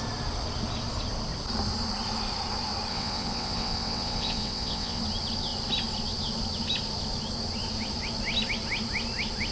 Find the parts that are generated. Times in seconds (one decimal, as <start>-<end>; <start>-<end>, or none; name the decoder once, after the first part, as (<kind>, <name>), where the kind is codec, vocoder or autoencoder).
2.9-5.0 (vocoder, WaveNeXt)